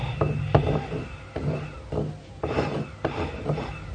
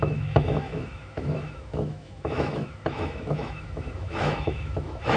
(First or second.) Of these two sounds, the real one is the first